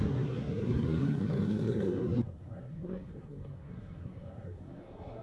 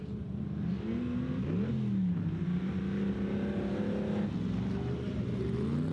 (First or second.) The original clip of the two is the second